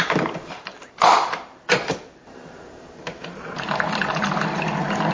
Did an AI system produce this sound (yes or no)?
yes